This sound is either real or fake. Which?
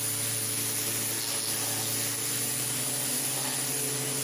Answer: real